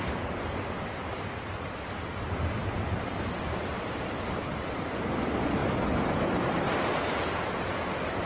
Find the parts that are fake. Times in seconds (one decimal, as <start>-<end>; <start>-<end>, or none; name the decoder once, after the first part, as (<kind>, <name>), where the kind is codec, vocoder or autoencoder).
none